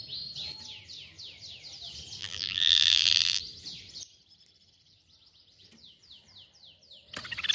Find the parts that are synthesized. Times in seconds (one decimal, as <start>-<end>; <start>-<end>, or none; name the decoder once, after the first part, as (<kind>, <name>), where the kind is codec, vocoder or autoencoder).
2.2-3.4 (vocoder, BigVGAN v2)